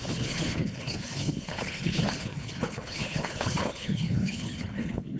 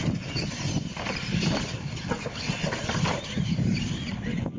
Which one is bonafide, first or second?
second